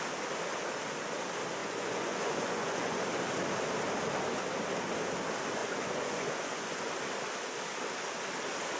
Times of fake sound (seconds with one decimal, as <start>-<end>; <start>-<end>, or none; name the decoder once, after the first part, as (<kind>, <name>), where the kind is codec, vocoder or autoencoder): 1.6-3.0 (vocoder, Vocos); 5.6-6.9